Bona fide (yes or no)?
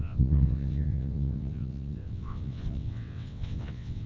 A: no